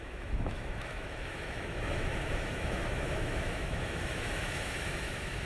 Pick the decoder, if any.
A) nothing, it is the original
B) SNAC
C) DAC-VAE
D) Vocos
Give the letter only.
C